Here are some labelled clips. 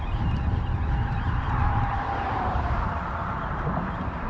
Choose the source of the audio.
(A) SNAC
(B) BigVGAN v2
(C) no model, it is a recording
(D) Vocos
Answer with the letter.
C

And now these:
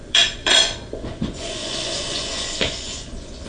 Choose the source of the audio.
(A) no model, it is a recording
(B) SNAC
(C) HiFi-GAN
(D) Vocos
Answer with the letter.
D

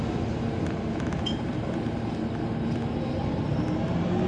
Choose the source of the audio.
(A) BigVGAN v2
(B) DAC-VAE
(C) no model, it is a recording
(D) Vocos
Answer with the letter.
C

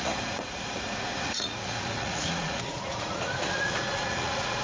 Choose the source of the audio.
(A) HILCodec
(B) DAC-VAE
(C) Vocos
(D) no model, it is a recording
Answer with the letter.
C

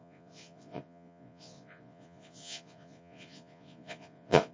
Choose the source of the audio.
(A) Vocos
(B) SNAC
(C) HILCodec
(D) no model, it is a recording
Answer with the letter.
A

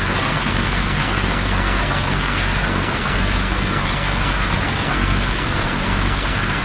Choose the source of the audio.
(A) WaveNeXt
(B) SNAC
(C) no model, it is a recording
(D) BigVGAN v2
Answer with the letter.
B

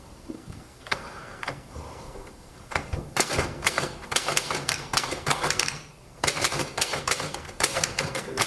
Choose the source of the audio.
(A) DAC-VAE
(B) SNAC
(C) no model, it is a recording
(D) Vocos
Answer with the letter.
B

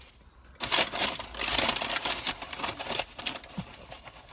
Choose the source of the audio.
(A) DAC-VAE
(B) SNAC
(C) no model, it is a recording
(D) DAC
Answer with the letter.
C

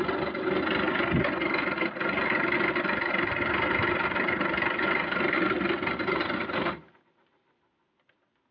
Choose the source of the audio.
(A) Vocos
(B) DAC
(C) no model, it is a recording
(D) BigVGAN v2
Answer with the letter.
C